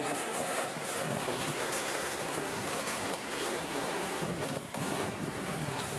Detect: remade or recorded remade